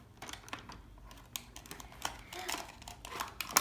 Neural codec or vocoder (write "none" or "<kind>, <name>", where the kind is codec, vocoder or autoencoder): none